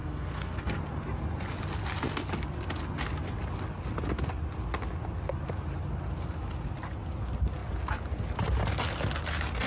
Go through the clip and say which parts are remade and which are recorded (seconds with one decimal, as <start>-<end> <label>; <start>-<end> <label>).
0.0-0.8 remade; 0.8-9.7 recorded